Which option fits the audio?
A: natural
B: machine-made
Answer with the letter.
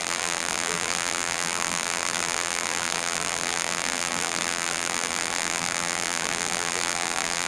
B